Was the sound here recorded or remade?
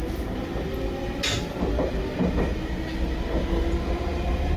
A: recorded